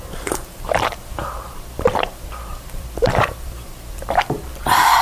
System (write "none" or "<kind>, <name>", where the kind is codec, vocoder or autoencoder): vocoder, BigVGAN v2